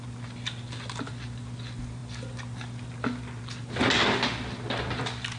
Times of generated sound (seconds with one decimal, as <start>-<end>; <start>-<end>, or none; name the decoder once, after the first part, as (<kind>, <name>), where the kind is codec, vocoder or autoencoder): none